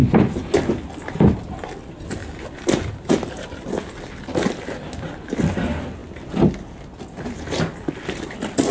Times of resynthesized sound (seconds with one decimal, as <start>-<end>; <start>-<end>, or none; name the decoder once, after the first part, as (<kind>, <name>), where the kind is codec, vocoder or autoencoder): 0.4-1.3 (vocoder, BigVGAN v2); 2.2-3.7